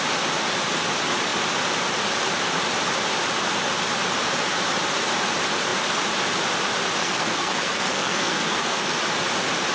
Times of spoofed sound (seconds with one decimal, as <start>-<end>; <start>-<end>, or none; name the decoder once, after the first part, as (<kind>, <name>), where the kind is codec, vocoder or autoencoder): 7.0-9.0 (codec, SNAC)